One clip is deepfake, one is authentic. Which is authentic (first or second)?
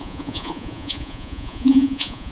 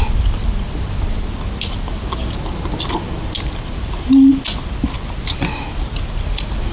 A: second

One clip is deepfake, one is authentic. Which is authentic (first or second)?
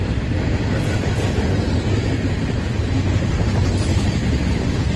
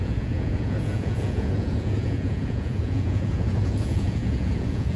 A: first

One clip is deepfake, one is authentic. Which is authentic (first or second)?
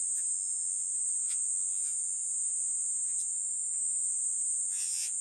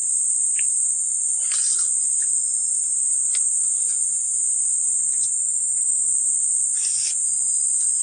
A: second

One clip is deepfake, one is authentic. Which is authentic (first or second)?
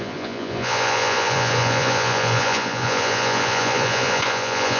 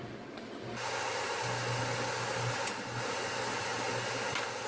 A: second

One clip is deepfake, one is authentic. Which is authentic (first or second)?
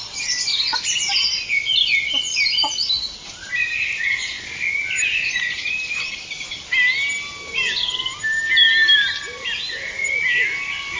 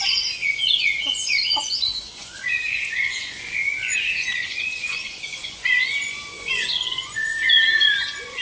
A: first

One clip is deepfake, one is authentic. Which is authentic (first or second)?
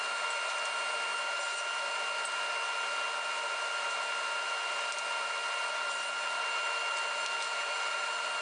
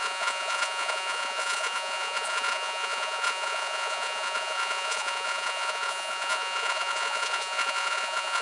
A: first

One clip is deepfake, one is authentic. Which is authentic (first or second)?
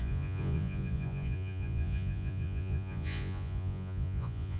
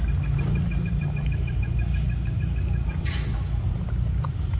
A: second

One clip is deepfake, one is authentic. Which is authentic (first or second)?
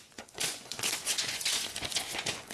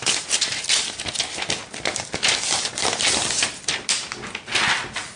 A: second